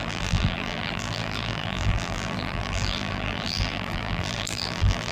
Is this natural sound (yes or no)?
no